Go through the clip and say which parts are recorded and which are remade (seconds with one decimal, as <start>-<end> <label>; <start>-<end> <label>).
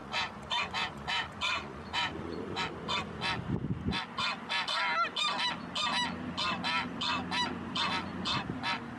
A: 0.0-2.6 remade; 2.6-9.0 recorded